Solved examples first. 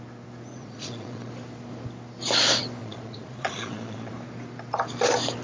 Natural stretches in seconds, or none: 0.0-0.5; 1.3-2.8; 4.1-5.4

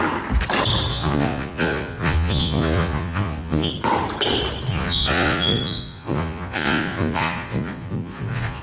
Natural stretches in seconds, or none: 0.0-0.9; 3.7-4.7

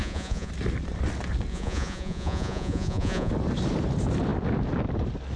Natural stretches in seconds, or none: 0.5-1.5; 3.3-5.4

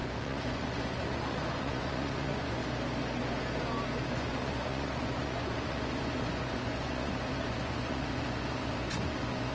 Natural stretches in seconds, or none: 2.6-4.1

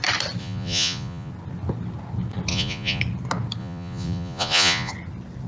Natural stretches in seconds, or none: 0.0-0.4; 1.3-2.5; 3.0-3.6; 4.9-5.5

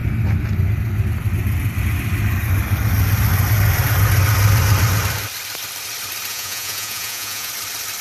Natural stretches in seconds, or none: 0.0-6.3; 7.5-8.0

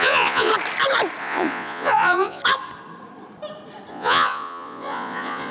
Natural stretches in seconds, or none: 0.5-1.2; 2.4-3.9

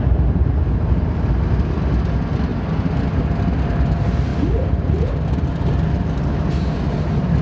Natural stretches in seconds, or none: 0.0-7.4